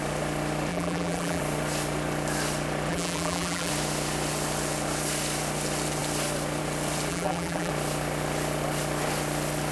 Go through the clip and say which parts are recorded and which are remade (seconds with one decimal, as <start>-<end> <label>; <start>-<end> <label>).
0.0-0.7 recorded; 0.7-1.4 remade; 1.4-2.9 recorded; 2.9-3.7 remade; 3.7-7.1 recorded; 7.1-7.7 remade; 7.7-9.7 recorded